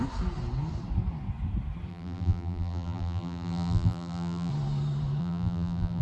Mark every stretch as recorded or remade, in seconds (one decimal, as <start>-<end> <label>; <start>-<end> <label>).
0.0-1.9 recorded; 1.9-4.5 remade; 4.5-5.2 recorded; 5.2-6.0 remade